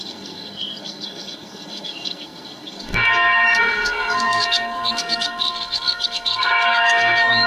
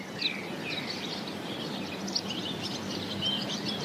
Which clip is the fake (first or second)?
first